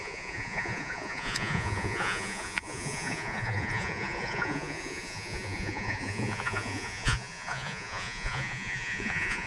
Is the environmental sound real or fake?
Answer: fake